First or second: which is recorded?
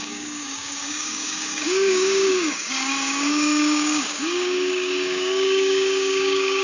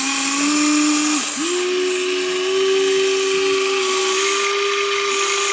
second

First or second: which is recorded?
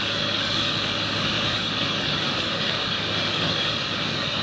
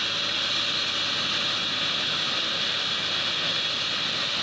second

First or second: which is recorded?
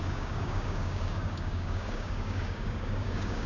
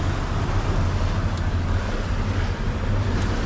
second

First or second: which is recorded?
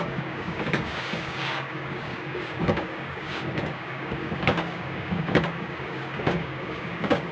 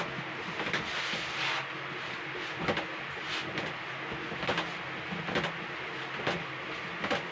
second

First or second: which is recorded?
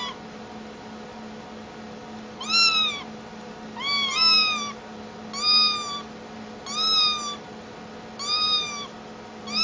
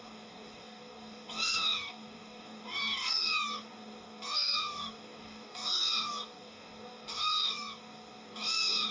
first